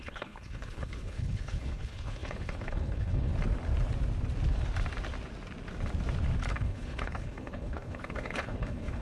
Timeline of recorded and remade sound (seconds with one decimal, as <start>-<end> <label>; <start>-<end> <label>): 0.0-3.3 remade; 3.3-6.5 recorded; 6.5-9.0 remade